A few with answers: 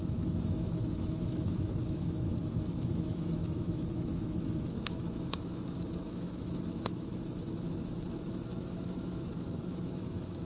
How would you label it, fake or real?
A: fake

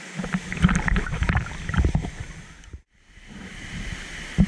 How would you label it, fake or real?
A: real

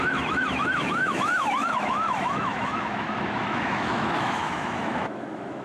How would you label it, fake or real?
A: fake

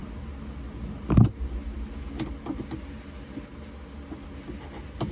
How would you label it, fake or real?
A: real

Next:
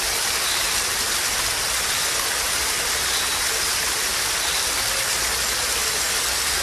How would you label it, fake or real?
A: real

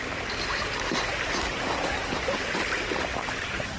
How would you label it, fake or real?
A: real